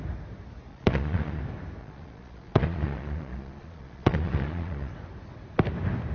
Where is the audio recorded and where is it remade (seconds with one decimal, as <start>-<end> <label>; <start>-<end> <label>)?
0.0-0.7 recorded; 0.7-1.4 remade; 1.4-1.8 recorded; 1.8-4.9 remade; 4.9-6.1 recorded